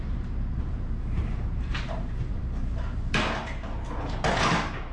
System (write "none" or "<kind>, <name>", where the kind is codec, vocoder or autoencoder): vocoder, BigVGAN v2